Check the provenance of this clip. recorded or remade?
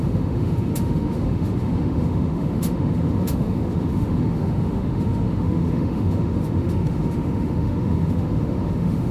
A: remade